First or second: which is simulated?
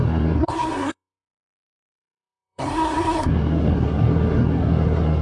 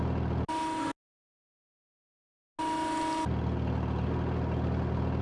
first